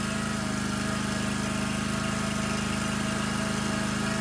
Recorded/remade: recorded